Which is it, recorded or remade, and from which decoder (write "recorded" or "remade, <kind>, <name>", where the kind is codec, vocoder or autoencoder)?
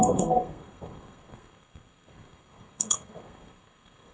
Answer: remade, codec, SNAC